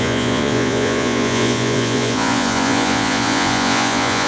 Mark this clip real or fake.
fake